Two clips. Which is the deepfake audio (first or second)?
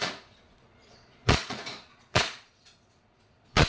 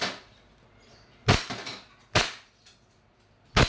first